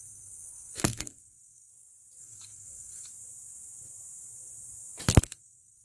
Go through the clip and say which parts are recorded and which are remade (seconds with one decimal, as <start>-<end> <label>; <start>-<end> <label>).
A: 0.0-1.7 remade; 1.7-2.2 recorded; 2.2-3.1 remade; 3.1-5.2 recorded; 5.2-5.8 remade